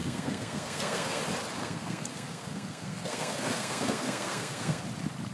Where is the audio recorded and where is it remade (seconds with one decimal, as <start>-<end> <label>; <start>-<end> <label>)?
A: 0.0-1.2 remade; 1.2-1.6 recorded; 1.6-4.8 remade; 4.8-5.3 recorded